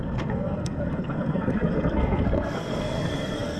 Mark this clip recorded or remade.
remade